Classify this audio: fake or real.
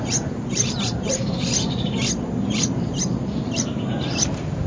fake